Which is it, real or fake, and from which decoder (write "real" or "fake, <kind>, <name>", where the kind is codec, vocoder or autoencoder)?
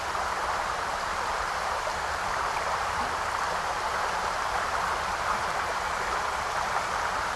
real